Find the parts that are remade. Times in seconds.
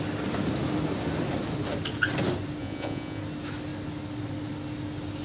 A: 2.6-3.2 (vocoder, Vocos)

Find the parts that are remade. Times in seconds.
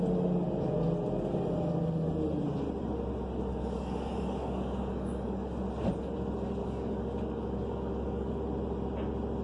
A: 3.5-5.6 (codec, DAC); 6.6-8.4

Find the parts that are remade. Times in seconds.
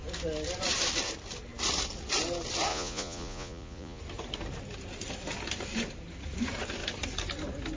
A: 2.7-4.0 (vocoder, Vocos)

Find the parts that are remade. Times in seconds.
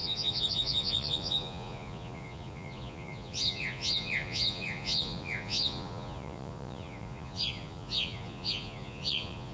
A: 0.0-9.5 (vocoder, Vocos)